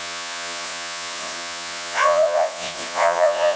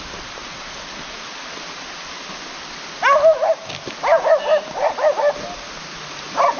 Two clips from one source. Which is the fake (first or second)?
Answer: first